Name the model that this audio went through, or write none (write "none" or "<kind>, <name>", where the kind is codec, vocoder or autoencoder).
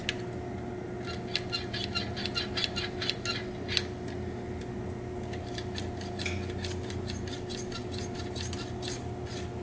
none